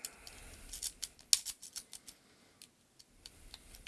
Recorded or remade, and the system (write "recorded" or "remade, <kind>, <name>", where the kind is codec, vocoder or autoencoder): recorded